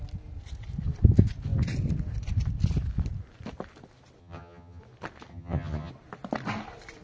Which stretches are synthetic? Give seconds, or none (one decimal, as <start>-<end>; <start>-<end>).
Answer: 4.2-4.8; 5.3-5.9